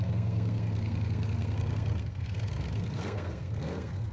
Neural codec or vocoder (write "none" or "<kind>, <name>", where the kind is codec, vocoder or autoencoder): codec, SNAC